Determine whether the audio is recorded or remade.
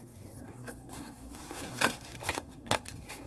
remade